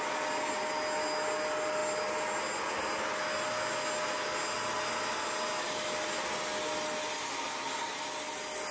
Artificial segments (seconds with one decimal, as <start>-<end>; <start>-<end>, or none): none